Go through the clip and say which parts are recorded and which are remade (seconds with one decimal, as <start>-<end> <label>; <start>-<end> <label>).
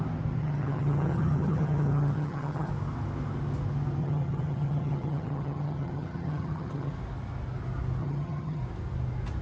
0.0-0.4 recorded; 0.4-2.7 remade; 2.7-4.0 recorded; 4.0-6.9 remade; 6.9-8.0 recorded; 8.0-8.6 remade; 8.6-9.4 recorded